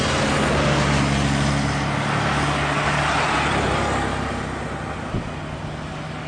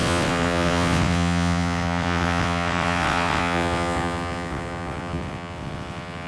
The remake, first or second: second